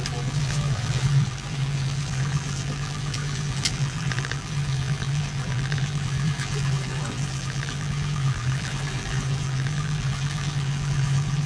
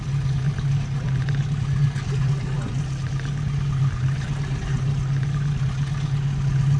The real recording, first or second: second